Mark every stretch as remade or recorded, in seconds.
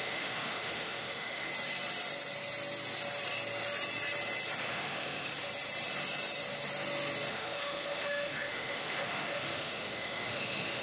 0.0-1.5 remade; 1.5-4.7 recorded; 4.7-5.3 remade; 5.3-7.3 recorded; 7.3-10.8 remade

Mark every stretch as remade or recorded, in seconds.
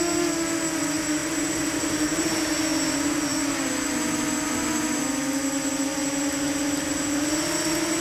0.0-8.0 recorded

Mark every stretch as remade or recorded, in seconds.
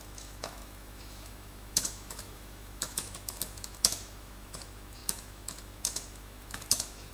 0.0-7.1 remade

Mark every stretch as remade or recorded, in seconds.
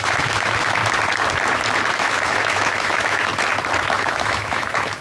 0.0-0.8 remade; 0.8-1.9 recorded; 1.9-3.3 remade; 3.3-4.0 recorded; 4.0-5.0 remade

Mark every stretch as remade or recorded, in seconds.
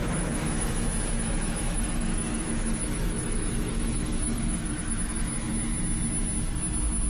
0.0-0.7 remade; 0.7-1.2 recorded; 1.2-5.5 remade; 5.5-7.1 recorded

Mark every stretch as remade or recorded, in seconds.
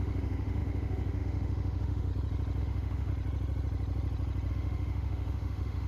0.0-2.1 remade; 2.1-2.6 recorded; 2.6-3.1 remade; 3.1-4.5 recorded; 4.5-5.9 remade